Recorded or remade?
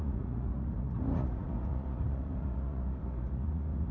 remade